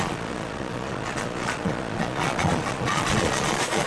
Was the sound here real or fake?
fake